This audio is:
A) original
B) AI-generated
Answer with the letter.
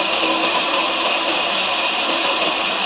B